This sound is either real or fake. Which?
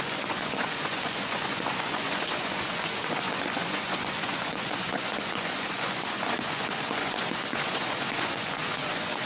fake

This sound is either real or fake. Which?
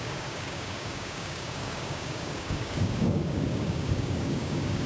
fake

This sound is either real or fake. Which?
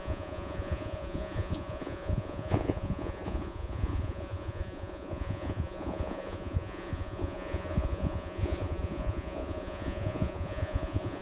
fake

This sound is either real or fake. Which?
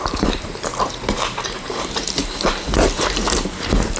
fake